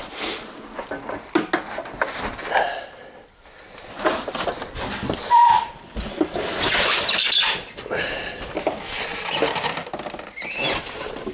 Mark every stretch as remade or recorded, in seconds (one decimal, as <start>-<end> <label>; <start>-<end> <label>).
0.0-11.3 recorded